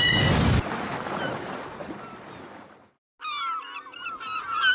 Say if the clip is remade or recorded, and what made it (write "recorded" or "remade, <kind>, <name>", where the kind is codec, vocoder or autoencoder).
recorded